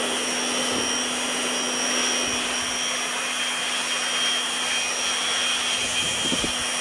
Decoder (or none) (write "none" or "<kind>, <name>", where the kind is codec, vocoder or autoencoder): none